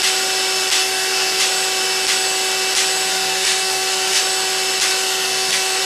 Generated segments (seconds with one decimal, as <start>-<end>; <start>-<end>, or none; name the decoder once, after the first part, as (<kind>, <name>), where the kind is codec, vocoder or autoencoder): 0.8-1.4 (codec, SNAC); 3.1-4.2; 4.9-5.8